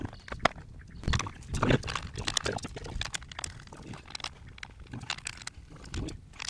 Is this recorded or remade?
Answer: recorded